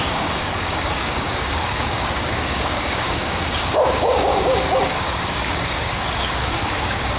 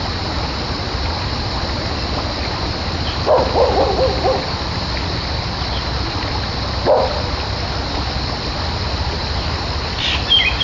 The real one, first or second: second